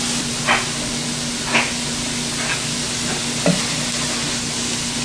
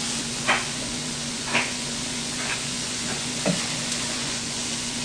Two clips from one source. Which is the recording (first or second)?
first